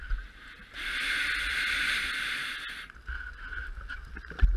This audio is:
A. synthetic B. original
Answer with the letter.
B